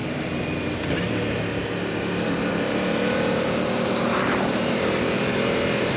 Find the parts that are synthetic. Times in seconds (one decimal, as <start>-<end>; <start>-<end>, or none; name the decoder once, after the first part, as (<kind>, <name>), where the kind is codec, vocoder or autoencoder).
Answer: 2.5-6.0 (vocoder, BigVGAN v2)